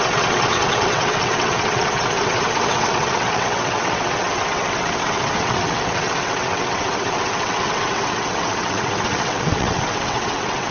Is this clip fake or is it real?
fake